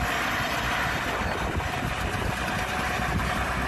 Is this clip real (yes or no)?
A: yes